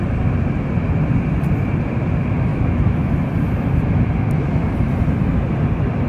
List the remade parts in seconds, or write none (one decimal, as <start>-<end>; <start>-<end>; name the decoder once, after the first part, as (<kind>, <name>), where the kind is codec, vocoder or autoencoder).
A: 2.5-3.1 (autoencoder, DAC-VAE)